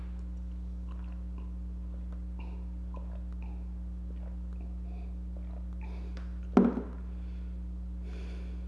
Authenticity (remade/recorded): recorded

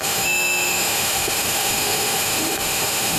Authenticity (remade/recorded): remade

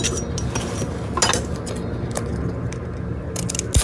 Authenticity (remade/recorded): recorded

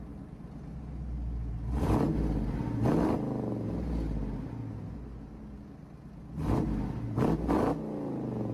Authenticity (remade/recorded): recorded